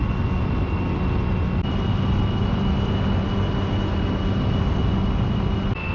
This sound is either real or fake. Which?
real